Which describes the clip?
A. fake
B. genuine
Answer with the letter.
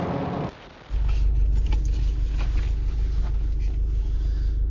B